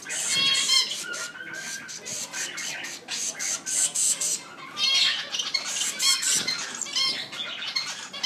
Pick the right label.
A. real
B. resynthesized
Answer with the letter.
A